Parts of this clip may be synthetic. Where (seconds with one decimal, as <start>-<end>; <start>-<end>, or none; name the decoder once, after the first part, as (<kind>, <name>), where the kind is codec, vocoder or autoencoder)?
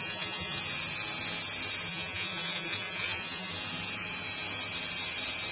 0.0-0.6 (vocoder, Vocos); 1.9-3.5